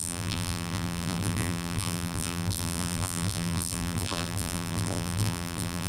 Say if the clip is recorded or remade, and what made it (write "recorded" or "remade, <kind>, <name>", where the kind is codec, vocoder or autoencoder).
remade, vocoder, BigVGAN v2